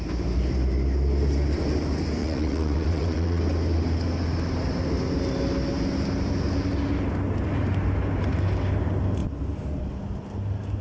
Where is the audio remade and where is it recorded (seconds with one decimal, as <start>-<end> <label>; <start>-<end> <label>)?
0.0-2.2 recorded; 2.2-3.4 remade; 3.4-10.8 recorded